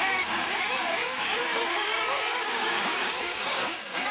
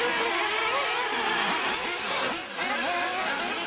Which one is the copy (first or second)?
first